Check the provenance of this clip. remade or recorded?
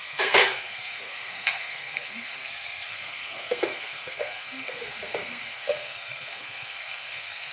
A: remade